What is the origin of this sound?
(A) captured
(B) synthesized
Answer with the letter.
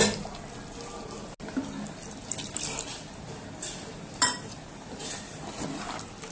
A